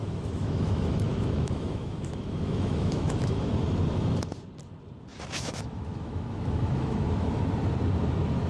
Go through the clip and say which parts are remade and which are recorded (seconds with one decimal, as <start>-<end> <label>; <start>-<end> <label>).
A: 0.0-3.5 remade; 3.5-5.1 recorded; 5.1-7.4 remade; 7.4-8.5 recorded